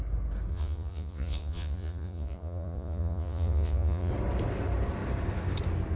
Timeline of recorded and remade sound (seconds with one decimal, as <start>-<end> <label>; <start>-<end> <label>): 0.0-0.5 recorded; 0.5-4.1 remade; 4.1-6.0 recorded